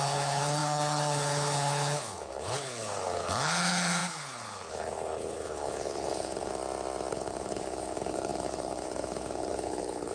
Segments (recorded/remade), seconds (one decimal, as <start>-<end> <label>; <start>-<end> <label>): 0.0-6.5 remade; 6.5-7.1 recorded; 7.1-10.1 remade

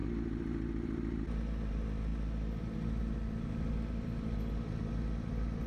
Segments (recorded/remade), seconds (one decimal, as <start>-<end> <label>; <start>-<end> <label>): 0.0-5.7 recorded

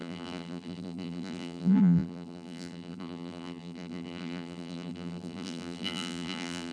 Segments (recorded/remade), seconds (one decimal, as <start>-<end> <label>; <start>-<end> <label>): 0.0-6.7 remade

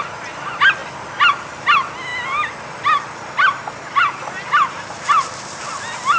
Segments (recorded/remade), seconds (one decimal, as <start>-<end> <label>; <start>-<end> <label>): 0.0-6.2 recorded

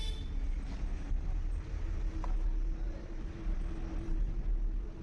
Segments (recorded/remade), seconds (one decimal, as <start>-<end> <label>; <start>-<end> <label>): 0.0-5.0 recorded